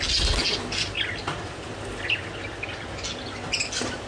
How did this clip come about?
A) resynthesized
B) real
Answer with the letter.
B